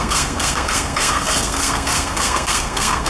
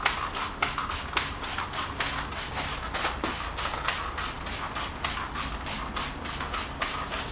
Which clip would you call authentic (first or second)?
second